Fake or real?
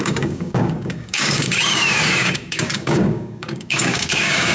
fake